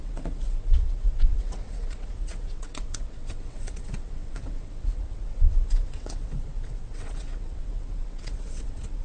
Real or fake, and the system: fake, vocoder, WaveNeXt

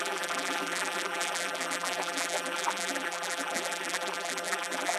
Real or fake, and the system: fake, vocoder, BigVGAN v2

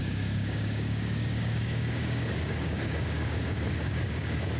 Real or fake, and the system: fake, codec, DAC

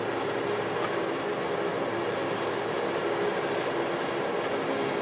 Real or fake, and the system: real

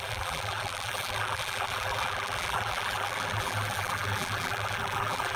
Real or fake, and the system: fake, vocoder, BigVGAN v2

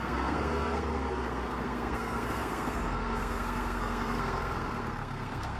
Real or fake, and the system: fake, codec, SNAC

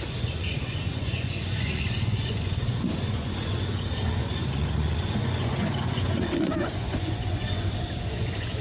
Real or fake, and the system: fake, vocoder, Vocos